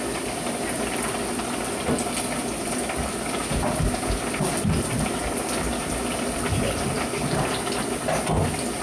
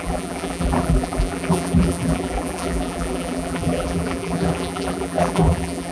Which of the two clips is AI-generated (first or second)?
second